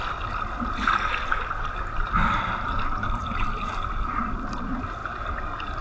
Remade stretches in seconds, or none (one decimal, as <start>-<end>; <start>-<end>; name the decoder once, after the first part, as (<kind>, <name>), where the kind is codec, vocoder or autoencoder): 0.0-3.2 (vocoder, BigVGAN v2); 4.5-5.0